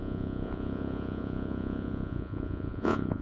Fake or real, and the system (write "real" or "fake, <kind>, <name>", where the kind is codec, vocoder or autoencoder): fake, vocoder, Vocos